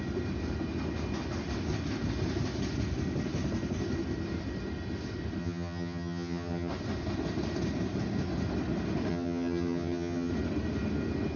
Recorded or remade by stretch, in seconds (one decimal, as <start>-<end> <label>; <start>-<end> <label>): 0.0-5.4 recorded; 5.4-6.7 remade; 6.7-9.1 recorded; 9.1-10.3 remade; 10.3-11.4 recorded